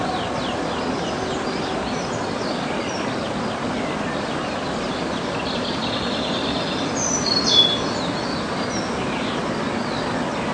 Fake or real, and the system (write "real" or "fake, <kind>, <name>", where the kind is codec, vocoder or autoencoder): real